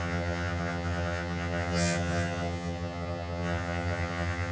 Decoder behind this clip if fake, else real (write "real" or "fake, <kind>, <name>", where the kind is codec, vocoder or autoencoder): fake, vocoder, HiFi-GAN